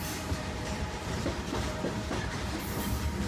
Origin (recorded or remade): remade